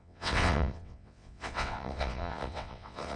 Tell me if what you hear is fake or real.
fake